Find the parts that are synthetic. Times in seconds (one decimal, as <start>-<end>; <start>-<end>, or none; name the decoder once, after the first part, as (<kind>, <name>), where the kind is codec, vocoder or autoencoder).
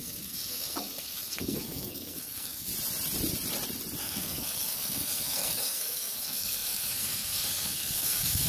0.0-2.7 (codec, SNAC); 4.0-8.5